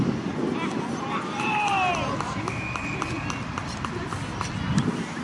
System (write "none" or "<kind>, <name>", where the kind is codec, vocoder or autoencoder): none